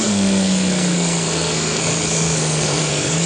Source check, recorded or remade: remade